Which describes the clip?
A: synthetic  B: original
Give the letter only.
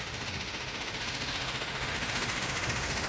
A